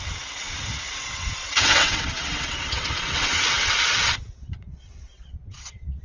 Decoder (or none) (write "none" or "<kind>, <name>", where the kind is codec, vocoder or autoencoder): vocoder, WaveNeXt